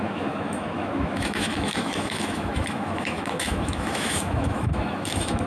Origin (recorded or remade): remade